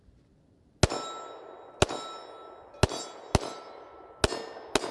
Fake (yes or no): no